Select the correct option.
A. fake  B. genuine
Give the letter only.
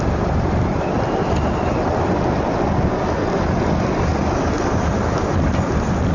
B